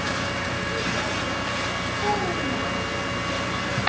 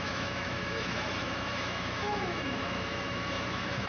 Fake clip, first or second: second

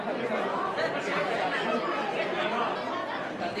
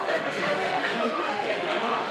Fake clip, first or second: second